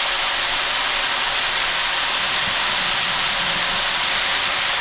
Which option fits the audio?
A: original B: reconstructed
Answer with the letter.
A